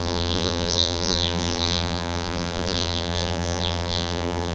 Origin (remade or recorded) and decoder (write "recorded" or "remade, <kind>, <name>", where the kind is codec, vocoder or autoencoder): remade, vocoder, BigVGAN v2